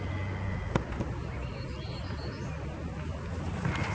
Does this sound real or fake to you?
real